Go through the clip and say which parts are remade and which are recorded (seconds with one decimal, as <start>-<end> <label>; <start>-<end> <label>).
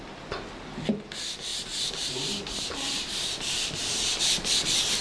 0.0-1.5 recorded; 1.5-4.5 remade; 4.5-5.0 recorded